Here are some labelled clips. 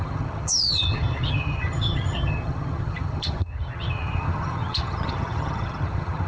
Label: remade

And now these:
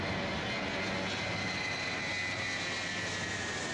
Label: recorded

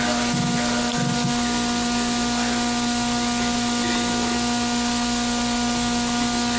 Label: recorded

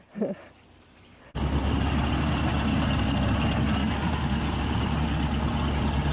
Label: recorded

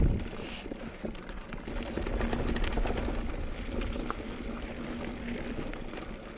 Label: recorded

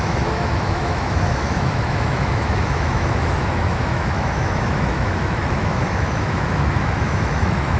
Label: remade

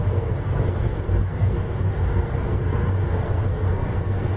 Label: remade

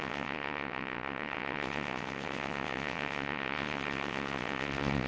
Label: remade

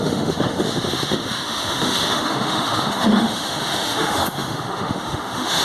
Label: remade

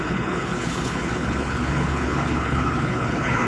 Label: remade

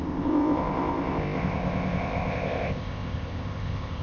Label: remade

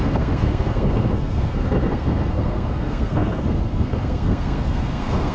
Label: remade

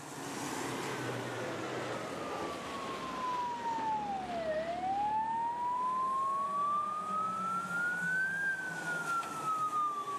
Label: recorded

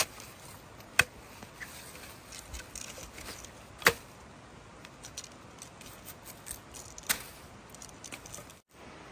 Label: recorded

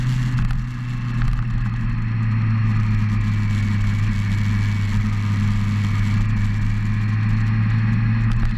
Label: recorded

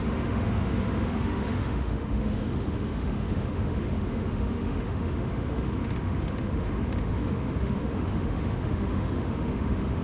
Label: remade